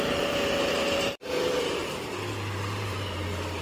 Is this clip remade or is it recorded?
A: remade